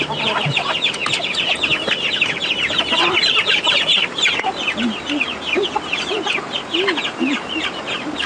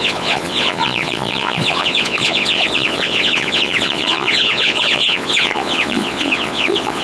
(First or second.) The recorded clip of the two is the first